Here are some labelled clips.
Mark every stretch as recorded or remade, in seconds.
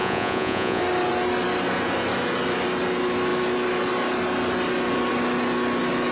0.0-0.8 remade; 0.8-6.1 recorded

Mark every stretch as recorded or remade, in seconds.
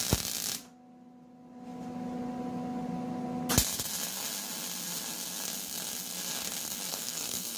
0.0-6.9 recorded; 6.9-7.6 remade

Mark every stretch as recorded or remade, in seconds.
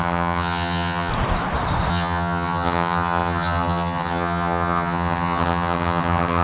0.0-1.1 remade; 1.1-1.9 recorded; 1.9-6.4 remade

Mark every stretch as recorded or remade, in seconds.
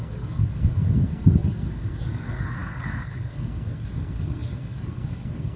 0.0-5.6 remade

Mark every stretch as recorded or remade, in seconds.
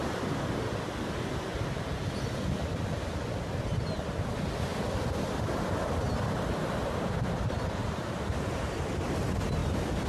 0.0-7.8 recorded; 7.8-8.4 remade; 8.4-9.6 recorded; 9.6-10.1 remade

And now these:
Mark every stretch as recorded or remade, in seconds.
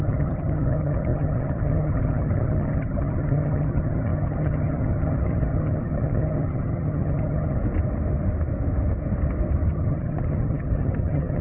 0.0-7.6 remade; 7.6-9.7 recorded; 9.7-11.4 remade